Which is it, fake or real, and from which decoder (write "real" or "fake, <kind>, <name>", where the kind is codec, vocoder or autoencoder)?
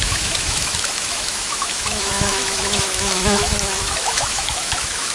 fake, autoencoder, DAC-VAE